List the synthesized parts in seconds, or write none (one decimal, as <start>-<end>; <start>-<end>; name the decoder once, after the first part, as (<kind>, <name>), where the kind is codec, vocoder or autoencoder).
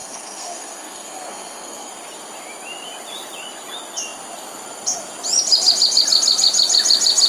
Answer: 0.0-1.9 (codec, SNAC)